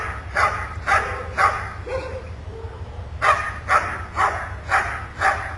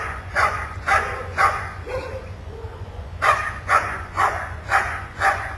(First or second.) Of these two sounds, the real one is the first